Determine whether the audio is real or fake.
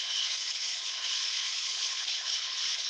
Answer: fake